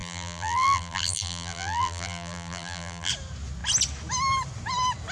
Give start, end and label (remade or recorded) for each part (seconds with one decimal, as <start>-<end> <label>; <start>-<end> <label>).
0.0-3.1 remade; 3.1-5.1 recorded